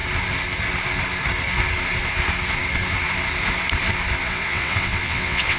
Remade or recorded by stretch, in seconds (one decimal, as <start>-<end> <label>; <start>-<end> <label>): 0.0-4.2 recorded; 4.2-5.6 remade